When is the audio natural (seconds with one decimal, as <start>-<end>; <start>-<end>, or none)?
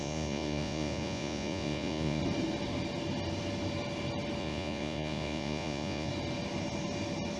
2.2-4.4; 6.1-7.4